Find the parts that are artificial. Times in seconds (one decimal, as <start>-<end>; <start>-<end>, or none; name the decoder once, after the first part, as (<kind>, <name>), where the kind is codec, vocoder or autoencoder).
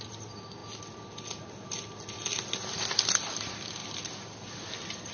none